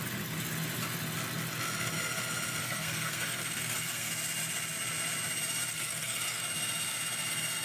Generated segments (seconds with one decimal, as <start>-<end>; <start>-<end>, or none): 2.6-4.1; 5.7-6.4